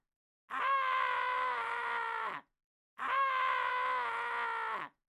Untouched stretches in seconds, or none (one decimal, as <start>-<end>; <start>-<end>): 0.0-0.6; 3.7-5.1